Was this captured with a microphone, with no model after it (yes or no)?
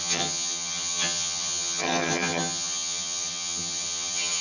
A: no